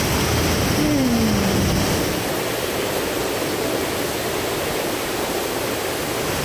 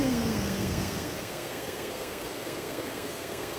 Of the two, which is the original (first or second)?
first